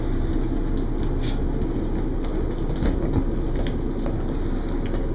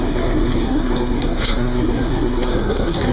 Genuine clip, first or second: first